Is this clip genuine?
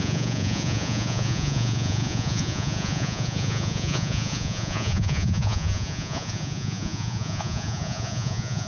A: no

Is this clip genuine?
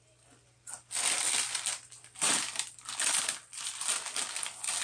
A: yes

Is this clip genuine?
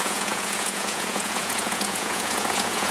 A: no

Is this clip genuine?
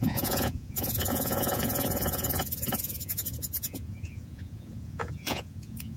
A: no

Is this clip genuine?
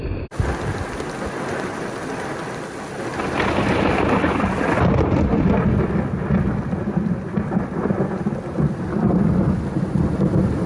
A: yes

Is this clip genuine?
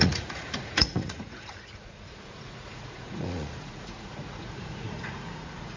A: no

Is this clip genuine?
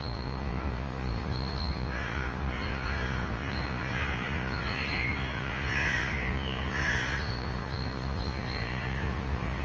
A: no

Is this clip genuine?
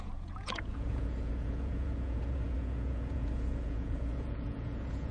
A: no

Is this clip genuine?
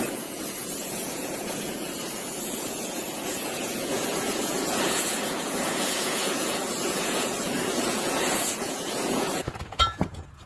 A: no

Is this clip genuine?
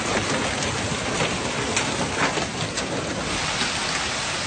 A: yes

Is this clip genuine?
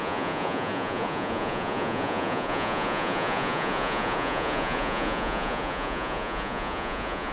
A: no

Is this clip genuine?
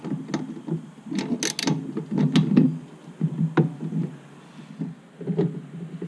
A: yes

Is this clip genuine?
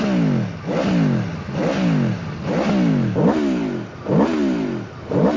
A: yes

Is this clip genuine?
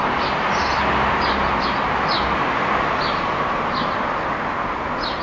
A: yes